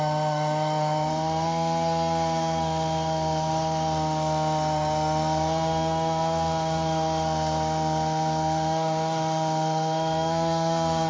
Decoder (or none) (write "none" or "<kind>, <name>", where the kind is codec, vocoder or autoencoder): codec, SNAC